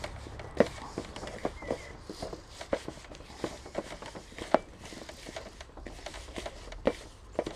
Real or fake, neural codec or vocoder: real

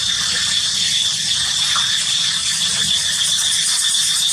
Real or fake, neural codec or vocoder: real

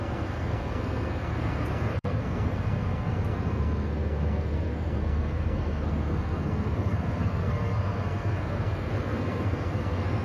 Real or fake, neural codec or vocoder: fake, codec, SNAC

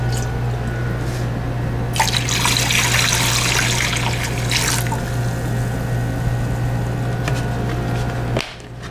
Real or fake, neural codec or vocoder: real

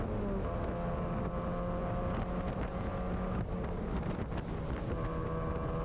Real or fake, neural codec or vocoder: real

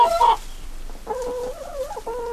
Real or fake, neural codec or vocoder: real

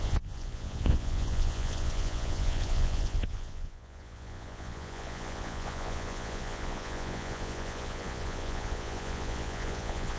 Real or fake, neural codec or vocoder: fake, vocoder, Vocos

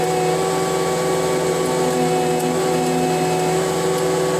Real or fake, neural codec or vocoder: real